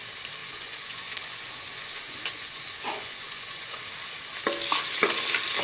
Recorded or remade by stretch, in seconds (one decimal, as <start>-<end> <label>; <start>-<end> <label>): 0.0-0.4 recorded; 0.4-3.8 remade; 3.8-5.6 recorded

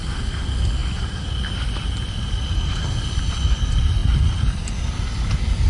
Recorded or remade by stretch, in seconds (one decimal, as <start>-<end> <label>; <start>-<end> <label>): 0.0-5.7 recorded

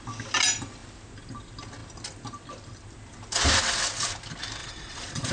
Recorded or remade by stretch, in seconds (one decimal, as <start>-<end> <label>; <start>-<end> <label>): 0.0-4.6 recorded; 4.6-5.3 remade